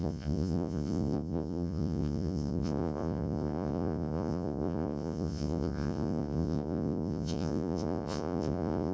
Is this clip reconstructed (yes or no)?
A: yes